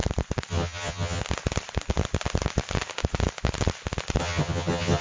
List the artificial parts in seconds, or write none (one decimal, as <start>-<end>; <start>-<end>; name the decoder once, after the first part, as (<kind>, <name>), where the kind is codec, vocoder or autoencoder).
0.5-1.2 (vocoder, HiFi-GAN); 4.2-5.0